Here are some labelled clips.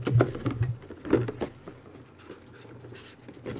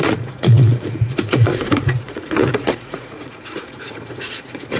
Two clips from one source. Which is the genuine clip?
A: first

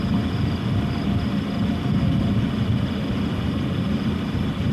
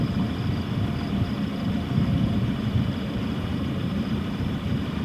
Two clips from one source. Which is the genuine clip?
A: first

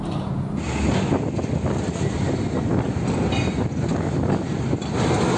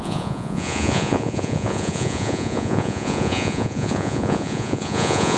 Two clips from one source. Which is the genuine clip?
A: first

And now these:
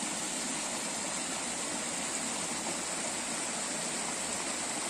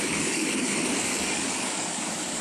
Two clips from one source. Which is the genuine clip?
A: first